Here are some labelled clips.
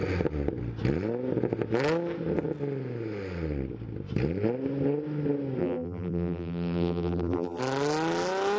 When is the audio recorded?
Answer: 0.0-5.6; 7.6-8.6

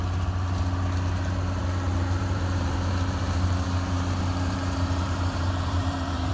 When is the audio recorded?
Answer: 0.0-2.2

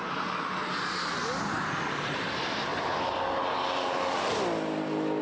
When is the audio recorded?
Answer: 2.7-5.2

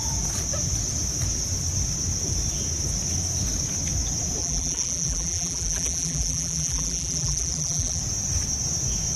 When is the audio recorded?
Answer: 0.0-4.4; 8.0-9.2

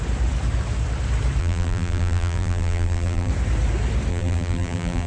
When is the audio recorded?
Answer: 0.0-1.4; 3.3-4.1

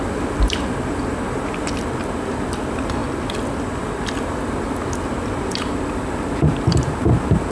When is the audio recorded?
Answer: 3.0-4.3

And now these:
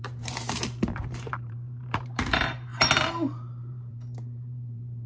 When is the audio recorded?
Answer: 2.7-3.5